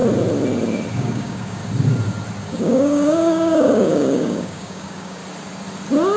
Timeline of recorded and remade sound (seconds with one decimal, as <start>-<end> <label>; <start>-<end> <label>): 0.0-0.9 recorded; 0.9-1.6 remade; 1.6-2.4 recorded; 2.4-5.2 remade; 5.2-6.2 recorded